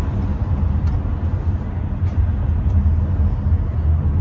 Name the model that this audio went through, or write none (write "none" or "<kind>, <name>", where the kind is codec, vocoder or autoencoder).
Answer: none